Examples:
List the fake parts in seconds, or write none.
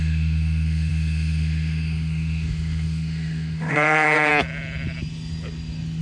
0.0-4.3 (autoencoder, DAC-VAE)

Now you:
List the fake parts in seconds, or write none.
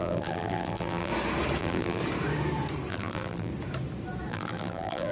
0.0-1.1 (vocoder, BigVGAN v2); 1.6-2.0; 2.9-3.5; 4.3-5.1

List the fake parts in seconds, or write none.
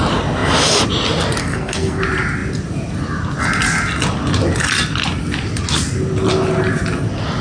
1.4-2.0 (codec, SNAC)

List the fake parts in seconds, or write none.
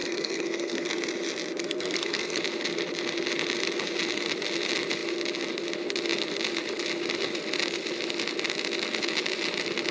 0.0-0.9 (codec, SNAC); 1.6-2.4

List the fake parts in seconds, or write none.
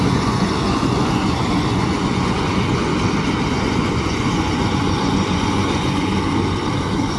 0.0-2.9 (vocoder, Vocos); 3.5-6.1; 6.8-7.2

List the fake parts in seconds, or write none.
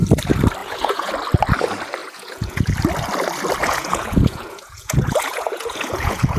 0.6-1.1 (vocoder, Vocos); 2.0-2.7; 3.6-6.4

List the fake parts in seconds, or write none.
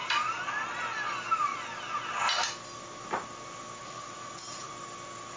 3.8-4.7 (vocoder, Vocos)